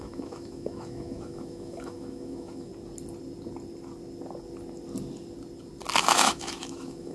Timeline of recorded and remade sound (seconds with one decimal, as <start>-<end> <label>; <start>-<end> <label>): 0.0-2.7 remade; 2.7-6.0 recorded; 6.0-7.1 remade